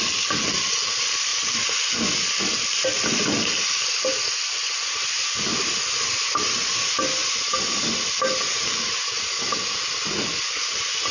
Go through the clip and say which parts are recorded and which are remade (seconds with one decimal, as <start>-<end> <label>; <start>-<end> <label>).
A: 0.0-11.1 recorded